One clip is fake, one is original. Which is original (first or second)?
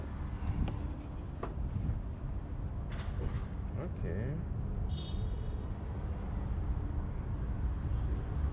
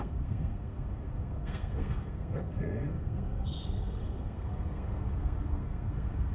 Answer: first